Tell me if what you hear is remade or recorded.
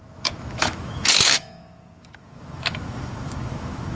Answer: remade